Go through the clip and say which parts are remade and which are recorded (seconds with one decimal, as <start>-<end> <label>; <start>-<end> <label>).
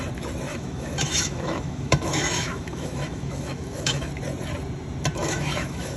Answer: 0.0-0.5 recorded; 0.5-4.1 remade; 4.1-5.2 recorded; 5.2-6.0 remade